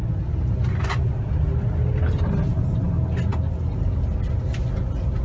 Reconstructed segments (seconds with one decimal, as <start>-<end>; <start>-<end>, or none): none